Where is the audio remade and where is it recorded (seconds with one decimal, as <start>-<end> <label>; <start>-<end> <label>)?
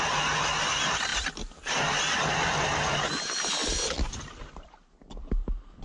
0.0-5.8 recorded